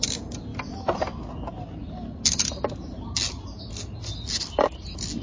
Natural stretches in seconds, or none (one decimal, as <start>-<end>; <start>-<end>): 0.0-5.2